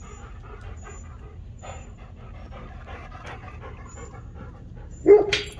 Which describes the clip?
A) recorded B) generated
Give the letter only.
A